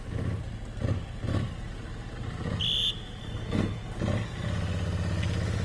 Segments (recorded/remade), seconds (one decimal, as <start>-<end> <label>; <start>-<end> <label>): 0.0-3.2 recorded; 3.2-3.9 remade; 3.9-5.6 recorded